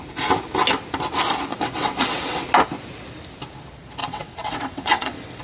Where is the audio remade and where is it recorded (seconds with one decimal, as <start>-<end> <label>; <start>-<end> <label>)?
0.0-1.5 recorded; 1.5-2.4 remade; 2.4-4.0 recorded; 4.0-5.4 remade